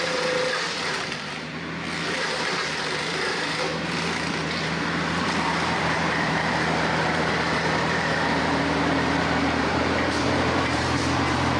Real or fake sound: fake